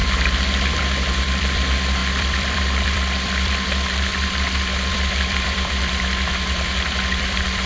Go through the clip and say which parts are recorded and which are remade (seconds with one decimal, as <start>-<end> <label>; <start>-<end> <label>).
0.0-0.6 recorded; 0.6-4.1 remade; 4.1-4.9 recorded; 4.9-7.7 remade